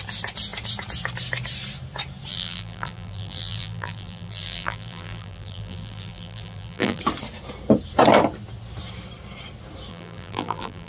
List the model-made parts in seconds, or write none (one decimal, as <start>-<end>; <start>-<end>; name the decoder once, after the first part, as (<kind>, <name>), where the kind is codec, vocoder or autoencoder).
2.3-7.0 (vocoder, BigVGAN v2); 9.9-10.9